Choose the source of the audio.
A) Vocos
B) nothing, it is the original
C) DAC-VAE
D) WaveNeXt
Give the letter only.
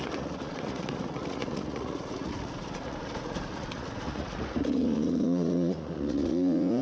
A